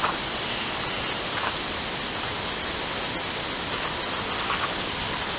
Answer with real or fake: real